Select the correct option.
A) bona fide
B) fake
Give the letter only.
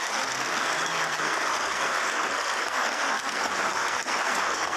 B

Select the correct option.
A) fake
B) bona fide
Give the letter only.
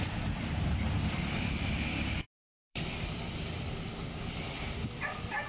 A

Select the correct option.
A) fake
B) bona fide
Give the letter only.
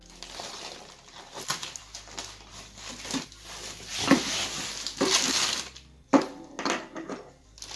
B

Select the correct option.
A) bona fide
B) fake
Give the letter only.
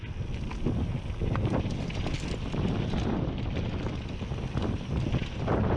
A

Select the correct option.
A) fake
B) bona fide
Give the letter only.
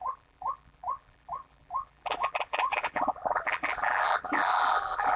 A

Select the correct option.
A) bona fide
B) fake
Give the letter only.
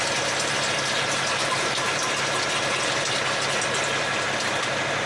A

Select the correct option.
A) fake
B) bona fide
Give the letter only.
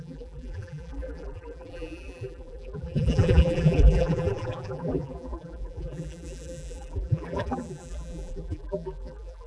A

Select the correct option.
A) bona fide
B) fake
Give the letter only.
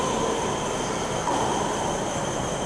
B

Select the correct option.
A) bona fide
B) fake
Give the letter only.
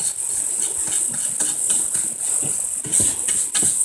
A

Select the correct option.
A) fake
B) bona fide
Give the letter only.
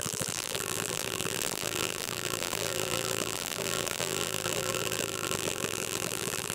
A